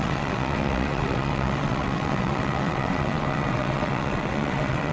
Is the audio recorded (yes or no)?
no